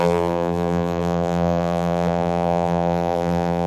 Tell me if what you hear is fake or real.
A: fake